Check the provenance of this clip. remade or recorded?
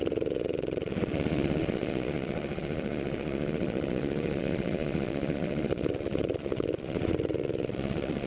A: remade